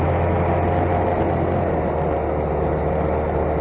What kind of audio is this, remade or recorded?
recorded